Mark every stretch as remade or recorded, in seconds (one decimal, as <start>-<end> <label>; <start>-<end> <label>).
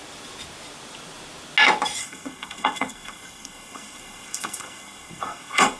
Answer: 0.0-2.0 recorded; 2.0-5.8 remade